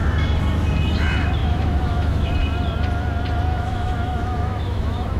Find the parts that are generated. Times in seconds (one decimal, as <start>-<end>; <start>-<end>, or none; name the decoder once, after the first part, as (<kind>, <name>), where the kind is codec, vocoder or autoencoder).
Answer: 1.4-2.3 (autoencoder, DAC-VAE); 3.5-5.2